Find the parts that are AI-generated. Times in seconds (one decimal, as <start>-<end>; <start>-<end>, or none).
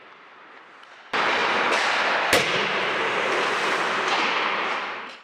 none